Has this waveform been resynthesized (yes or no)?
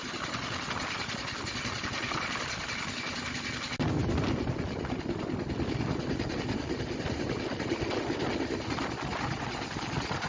no